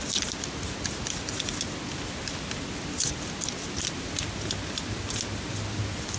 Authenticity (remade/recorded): recorded